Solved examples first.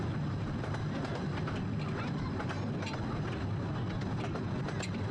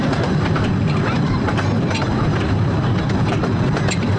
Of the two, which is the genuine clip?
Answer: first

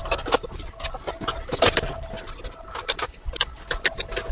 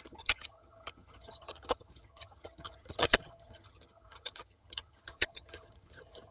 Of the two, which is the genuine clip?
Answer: first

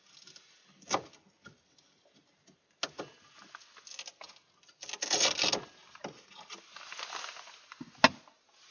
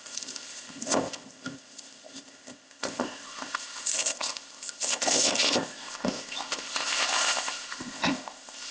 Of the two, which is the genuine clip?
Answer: first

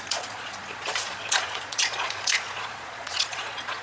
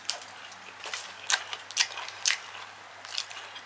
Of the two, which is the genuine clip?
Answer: second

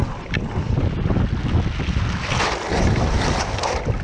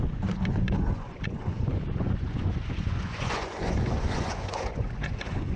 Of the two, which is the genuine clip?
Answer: first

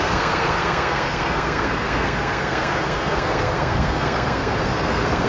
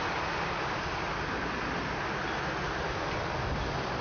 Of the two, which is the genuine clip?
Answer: second